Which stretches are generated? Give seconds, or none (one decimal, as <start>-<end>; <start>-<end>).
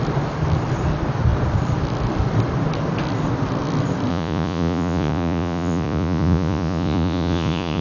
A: 4.1-7.8